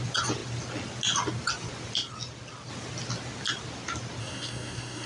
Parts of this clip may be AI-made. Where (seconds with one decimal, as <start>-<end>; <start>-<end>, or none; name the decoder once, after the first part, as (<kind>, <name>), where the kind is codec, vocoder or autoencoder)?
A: 4.2-5.1 (codec, SNAC)